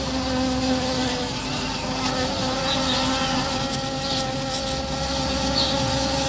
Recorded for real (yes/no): yes